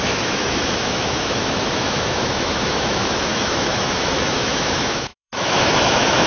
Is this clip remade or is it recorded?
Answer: remade